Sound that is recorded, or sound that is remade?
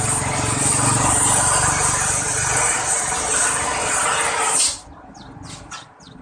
recorded